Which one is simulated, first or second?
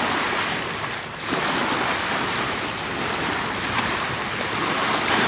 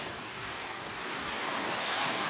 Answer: second